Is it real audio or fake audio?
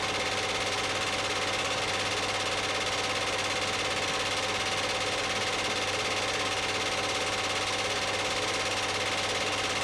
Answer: real